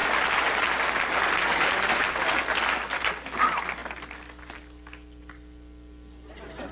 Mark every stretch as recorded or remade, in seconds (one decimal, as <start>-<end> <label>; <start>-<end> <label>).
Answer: 0.0-6.7 recorded